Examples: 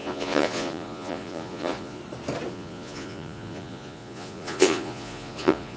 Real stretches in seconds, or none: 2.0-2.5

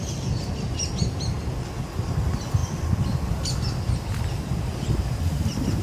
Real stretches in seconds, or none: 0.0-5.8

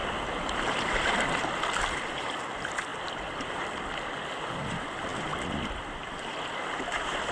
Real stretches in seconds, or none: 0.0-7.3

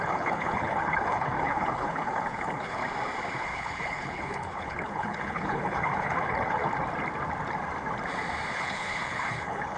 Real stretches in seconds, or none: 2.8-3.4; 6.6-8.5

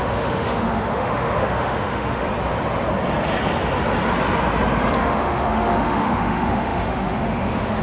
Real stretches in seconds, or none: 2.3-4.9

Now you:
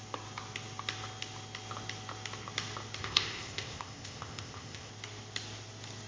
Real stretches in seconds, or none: 0.0-3.0; 4.9-6.1

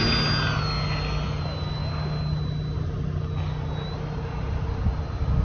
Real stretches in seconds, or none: 0.0-5.4